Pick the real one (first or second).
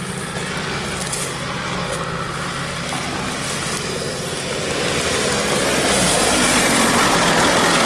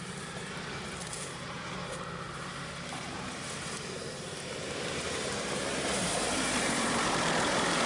first